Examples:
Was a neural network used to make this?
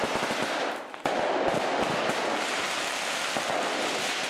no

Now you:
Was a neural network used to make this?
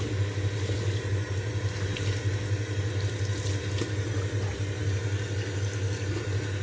no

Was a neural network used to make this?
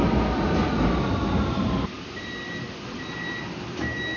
no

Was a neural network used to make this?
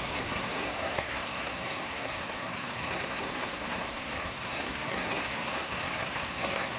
yes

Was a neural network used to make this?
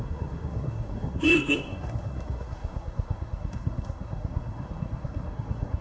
yes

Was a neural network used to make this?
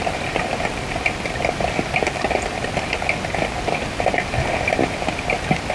no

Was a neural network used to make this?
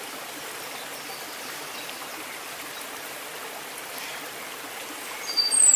no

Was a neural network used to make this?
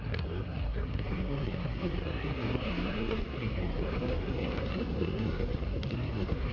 yes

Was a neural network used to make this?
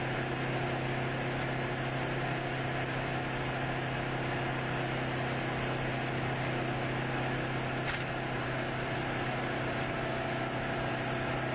no